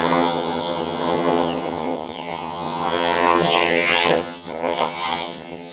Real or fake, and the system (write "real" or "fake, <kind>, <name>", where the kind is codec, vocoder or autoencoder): fake, vocoder, HiFi-GAN